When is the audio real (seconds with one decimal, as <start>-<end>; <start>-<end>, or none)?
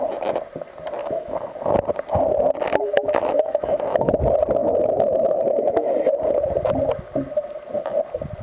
0.0-1.0; 1.5-2.8; 4.1-4.6; 5.9-8.4